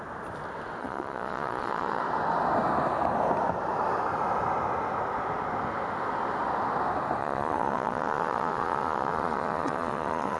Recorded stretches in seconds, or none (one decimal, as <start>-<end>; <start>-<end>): 0.0-0.8; 2.0-7.2